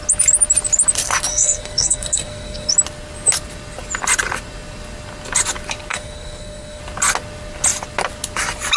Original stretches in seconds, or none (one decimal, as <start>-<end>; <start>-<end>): 0.0-1.3; 2.7-5.9; 6.8-8.8